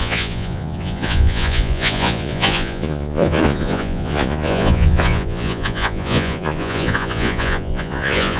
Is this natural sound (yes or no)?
no